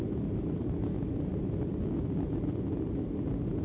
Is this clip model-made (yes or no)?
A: no